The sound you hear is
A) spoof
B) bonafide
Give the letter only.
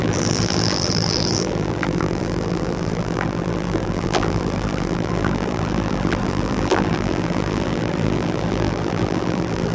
A